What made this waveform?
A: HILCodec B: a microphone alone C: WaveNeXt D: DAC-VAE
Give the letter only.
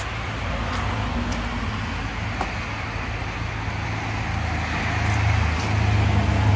B